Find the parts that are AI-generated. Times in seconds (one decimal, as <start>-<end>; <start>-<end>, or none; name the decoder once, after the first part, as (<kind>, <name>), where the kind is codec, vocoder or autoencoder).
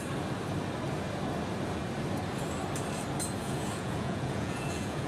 3.4-5.1 (vocoder, Vocos)